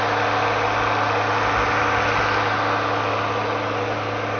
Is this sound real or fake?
real